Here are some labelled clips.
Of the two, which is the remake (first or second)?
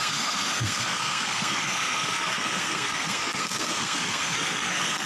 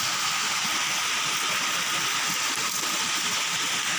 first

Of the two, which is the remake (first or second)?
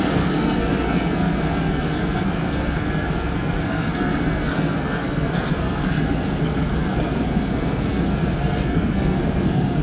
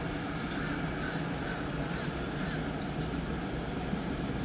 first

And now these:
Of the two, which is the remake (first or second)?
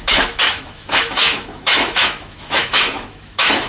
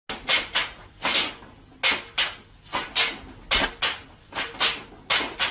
first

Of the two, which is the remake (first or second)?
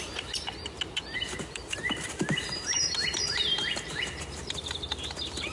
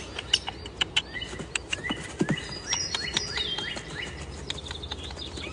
first